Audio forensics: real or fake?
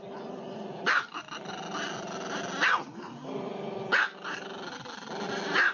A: real